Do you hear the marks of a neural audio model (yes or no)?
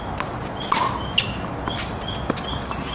no